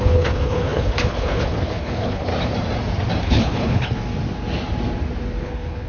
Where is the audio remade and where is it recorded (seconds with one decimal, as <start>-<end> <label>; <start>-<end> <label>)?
0.0-2.3 remade; 2.3-3.2 recorded; 3.2-4.0 remade; 4.0-5.4 recorded; 5.4-5.9 remade